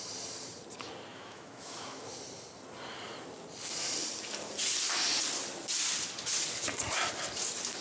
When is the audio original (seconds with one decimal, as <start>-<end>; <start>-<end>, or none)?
0.0-1.1; 2.0-7.8